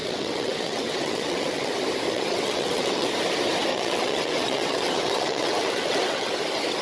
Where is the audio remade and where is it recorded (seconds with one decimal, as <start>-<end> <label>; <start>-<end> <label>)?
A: 0.0-1.7 remade; 1.7-2.1 recorded; 2.1-3.1 remade; 3.1-3.7 recorded; 3.7-6.3 remade; 6.3-6.8 recorded